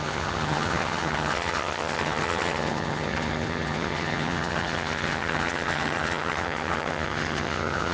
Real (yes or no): no